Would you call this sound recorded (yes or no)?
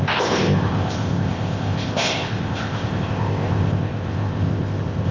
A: no